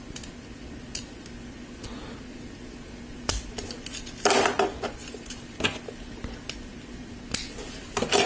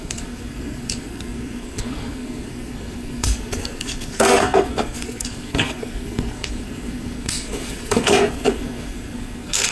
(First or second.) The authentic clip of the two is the first